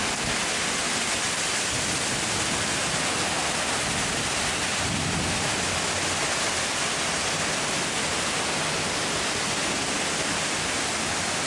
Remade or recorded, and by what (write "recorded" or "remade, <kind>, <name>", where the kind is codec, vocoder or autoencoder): recorded